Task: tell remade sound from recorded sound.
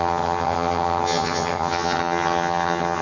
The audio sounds remade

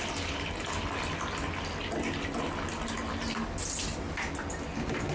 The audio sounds recorded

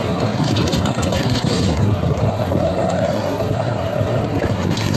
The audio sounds remade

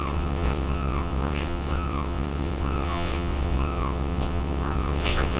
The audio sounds remade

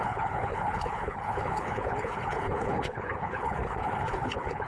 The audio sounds remade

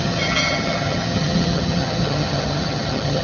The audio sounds remade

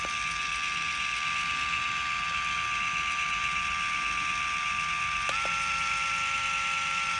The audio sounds recorded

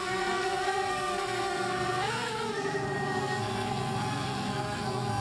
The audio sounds remade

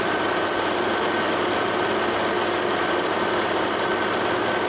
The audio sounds recorded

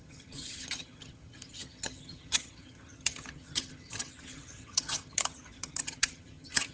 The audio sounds remade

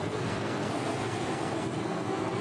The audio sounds remade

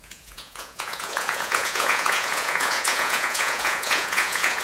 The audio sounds remade